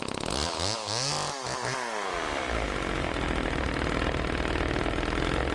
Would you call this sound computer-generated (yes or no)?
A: no